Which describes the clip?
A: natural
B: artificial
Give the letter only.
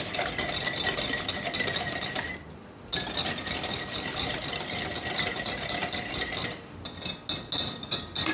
A